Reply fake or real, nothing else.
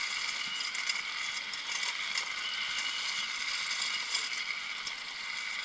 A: real